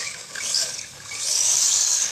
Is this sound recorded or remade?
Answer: remade